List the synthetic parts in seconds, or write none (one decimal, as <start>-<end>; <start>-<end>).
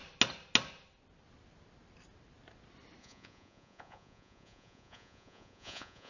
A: 3.0-6.1